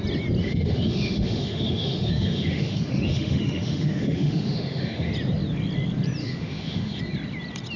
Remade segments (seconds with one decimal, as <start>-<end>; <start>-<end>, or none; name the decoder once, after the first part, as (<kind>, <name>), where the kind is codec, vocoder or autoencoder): 0.4-5.1 (autoencoder, DAC-VAE); 6.2-7.0